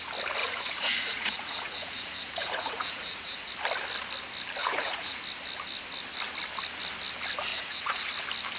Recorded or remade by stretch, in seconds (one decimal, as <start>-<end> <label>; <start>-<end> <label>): 0.0-0.4 recorded; 0.4-3.5 remade; 3.5-4.6 recorded; 4.6-5.2 remade; 5.2-7.5 recorded; 7.5-8.1 remade; 8.1-8.6 recorded